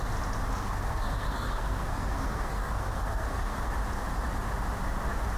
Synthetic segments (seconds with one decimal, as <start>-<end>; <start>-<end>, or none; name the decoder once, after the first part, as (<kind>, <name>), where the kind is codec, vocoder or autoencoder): 0.5-3.7 (codec, SNAC)